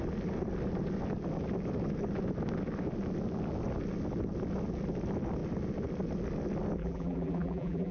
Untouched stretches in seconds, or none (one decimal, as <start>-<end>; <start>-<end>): 0.0-6.8